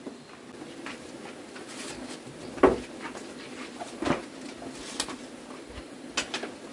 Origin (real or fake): real